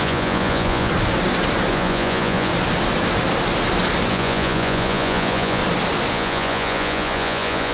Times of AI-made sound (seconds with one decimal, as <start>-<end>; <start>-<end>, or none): 0.0-0.9; 1.7-2.5; 4.1-5.6; 6.1-7.7